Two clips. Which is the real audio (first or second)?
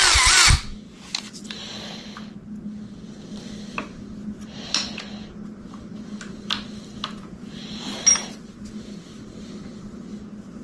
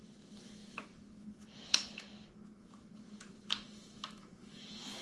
first